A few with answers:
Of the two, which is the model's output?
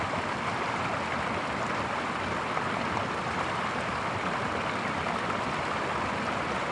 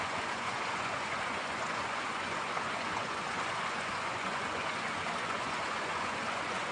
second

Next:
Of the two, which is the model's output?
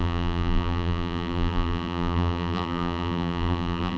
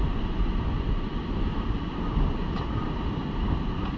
first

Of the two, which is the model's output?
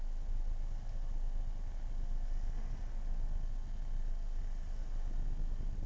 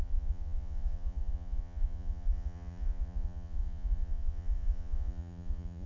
second